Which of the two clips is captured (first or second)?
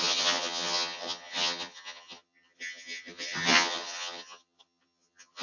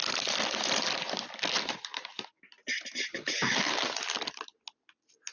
second